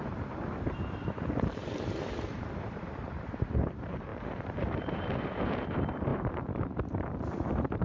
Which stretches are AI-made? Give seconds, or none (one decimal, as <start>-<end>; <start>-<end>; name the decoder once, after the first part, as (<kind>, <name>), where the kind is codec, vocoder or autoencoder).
0.0-7.8 (vocoder, BigVGAN v2)